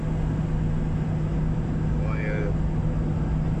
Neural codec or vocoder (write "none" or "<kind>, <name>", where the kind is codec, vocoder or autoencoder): none